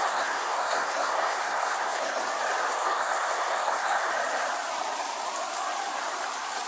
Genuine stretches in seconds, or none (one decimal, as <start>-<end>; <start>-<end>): 2.2-2.7; 4.1-6.7